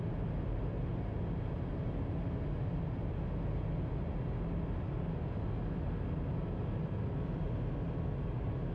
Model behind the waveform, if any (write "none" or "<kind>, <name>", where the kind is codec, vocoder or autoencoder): none